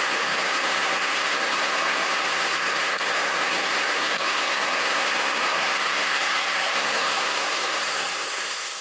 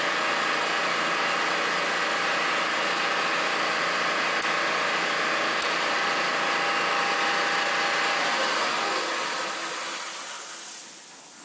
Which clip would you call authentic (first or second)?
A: second